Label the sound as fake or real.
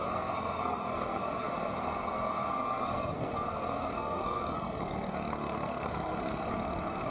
fake